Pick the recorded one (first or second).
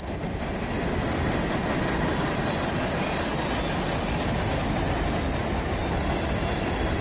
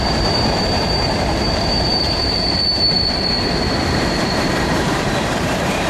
first